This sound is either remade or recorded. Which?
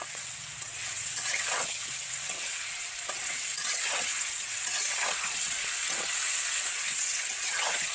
remade